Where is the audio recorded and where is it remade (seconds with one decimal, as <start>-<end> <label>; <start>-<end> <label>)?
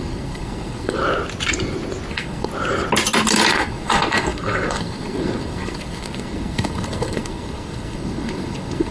0.0-1.0 remade; 1.0-2.1 recorded; 2.1-2.5 remade; 2.5-3.5 recorded; 3.5-8.9 remade